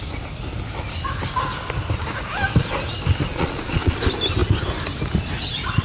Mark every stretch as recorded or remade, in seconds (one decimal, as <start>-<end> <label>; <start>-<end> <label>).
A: 0.0-3.3 recorded; 3.3-4.0 remade; 4.0-5.8 recorded